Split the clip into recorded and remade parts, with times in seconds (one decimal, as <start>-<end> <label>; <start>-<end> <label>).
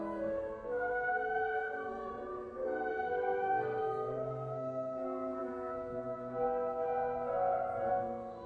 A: 0.0-2.1 remade; 2.1-2.9 recorded; 2.9-7.3 remade; 7.3-7.9 recorded; 7.9-8.5 remade